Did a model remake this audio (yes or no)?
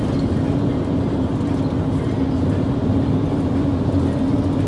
no